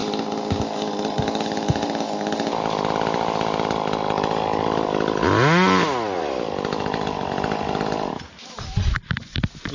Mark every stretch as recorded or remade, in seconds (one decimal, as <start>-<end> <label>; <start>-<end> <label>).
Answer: 0.0-9.7 recorded

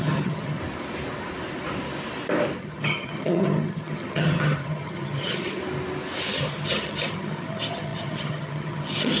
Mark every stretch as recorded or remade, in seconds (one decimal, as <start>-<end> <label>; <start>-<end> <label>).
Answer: 0.0-0.6 remade; 0.6-2.6 recorded; 2.6-5.6 remade; 5.6-6.3 recorded; 6.3-9.2 remade

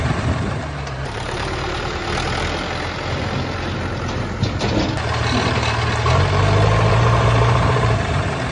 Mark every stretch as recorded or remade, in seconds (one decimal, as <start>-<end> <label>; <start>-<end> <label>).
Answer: 0.0-2.0 remade; 2.0-6.9 recorded; 6.9-8.5 remade